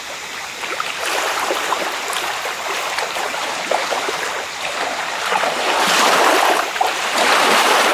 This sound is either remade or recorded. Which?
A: recorded